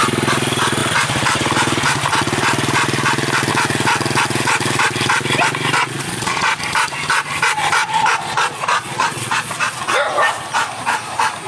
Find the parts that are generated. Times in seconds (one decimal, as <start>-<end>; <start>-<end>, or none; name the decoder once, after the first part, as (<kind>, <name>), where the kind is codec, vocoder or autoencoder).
5.8-6.6 (vocoder, Vocos); 7.8-9.8